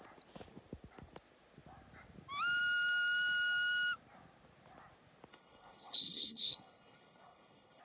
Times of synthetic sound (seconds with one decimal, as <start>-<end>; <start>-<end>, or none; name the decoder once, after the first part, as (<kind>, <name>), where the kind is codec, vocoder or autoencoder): 5.3-7.8 (codec, HILCodec)